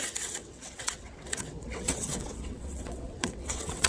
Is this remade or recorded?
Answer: remade